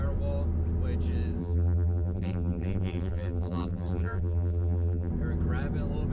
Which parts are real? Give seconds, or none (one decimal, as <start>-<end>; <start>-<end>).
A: 0.0-1.4; 5.1-6.1

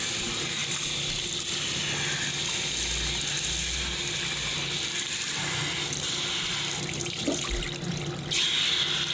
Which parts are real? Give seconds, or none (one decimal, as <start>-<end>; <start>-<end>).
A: 0.0-9.1

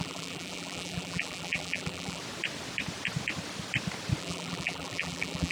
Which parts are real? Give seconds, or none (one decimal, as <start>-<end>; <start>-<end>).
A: 2.2-4.2

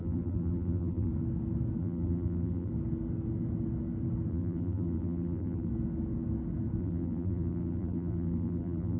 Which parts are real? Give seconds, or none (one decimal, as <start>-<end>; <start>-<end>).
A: 1.1-1.8; 2.7-4.3; 5.7-6.8

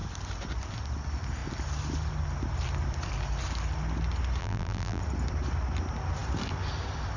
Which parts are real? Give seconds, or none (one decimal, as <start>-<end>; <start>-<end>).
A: 0.0-4.4; 5.0-7.2